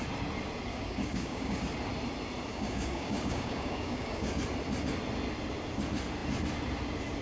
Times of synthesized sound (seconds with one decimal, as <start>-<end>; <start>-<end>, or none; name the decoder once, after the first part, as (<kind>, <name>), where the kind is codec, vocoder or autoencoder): 0.7-1.6 (codec, DAC); 2.5-4.4